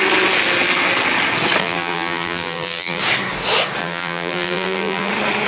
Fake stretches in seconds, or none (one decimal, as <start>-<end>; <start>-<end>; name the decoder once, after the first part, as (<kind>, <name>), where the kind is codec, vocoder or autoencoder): 1.6-3.0 (vocoder, BigVGAN v2); 3.8-5.1